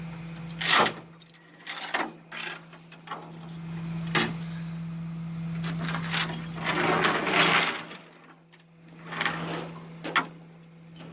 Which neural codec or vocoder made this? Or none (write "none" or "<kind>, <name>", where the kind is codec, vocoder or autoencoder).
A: none